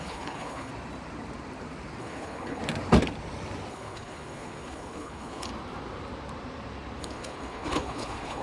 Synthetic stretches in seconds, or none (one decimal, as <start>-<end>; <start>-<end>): 0.0-0.7; 2.0-2.6; 3.7-5.5; 7.0-8.4